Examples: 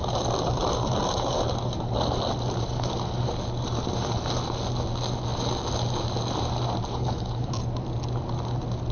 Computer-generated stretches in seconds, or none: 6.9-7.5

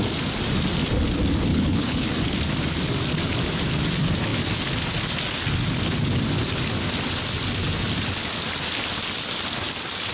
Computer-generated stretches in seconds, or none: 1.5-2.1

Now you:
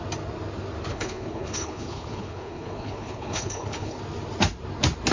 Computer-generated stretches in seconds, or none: 0.9-4.0

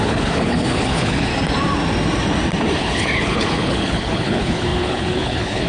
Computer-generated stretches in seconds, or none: 0.0-1.3; 2.8-5.7